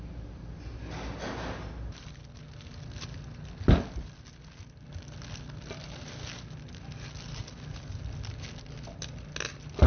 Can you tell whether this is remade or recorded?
recorded